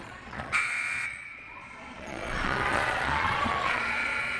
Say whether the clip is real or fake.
fake